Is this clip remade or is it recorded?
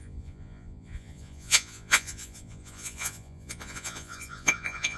remade